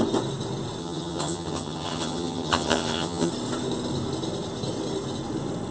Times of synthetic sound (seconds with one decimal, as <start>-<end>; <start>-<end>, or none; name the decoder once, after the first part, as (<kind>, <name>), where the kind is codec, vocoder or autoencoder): 0.8-3.3 (vocoder, HiFi-GAN)